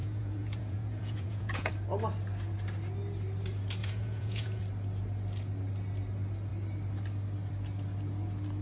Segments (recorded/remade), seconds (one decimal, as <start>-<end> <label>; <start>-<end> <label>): 0.0-1.7 remade; 1.7-3.8 recorded; 3.8-4.6 remade; 4.6-8.6 recorded